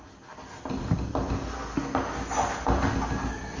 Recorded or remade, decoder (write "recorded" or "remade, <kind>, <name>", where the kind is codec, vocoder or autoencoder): recorded